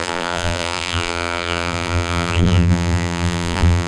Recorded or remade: remade